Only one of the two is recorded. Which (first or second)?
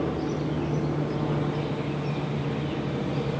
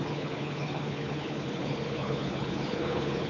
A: first